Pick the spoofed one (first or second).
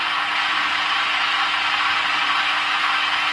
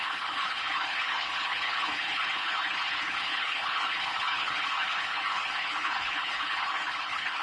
second